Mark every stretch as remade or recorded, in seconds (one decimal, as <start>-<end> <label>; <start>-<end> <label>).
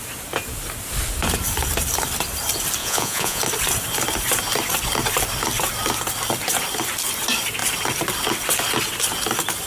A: 0.0-2.8 recorded; 2.8-3.4 remade; 3.4-9.7 recorded